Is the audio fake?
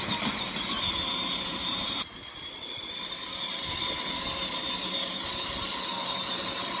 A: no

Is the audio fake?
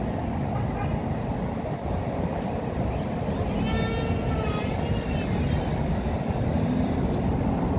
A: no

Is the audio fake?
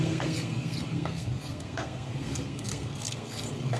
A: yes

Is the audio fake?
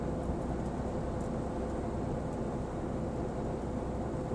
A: no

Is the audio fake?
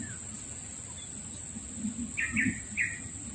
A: no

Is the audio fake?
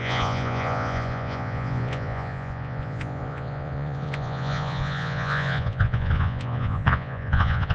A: yes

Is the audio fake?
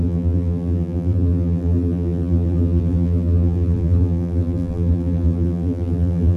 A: yes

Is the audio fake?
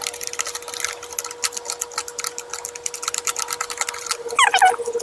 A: no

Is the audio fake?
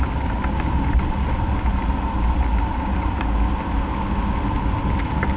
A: no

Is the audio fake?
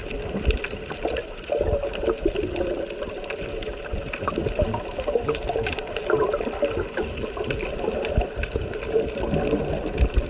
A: no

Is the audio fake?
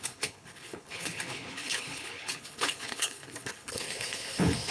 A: yes